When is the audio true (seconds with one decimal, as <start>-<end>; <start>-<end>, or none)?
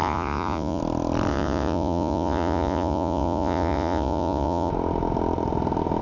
0.8-1.3; 4.7-6.0